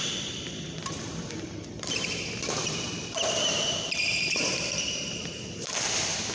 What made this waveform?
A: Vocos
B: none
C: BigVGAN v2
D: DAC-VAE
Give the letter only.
C